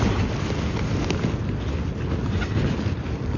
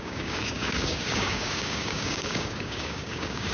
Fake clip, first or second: second